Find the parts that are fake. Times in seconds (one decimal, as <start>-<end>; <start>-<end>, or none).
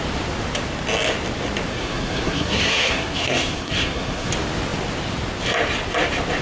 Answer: 1.7-4.3